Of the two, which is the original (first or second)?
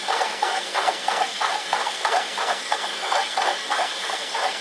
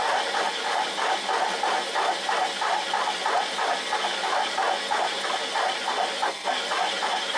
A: second